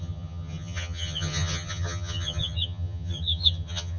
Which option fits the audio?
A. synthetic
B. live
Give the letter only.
A